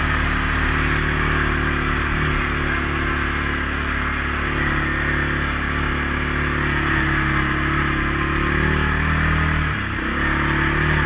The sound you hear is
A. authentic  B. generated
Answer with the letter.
A